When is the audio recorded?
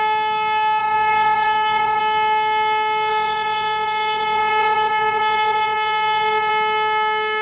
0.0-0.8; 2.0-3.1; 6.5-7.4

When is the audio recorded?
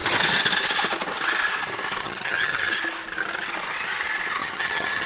0.0-2.0; 2.8-4.4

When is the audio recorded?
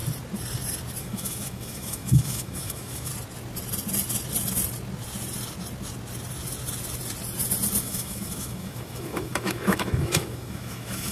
0.0-1.0; 3.1-7.8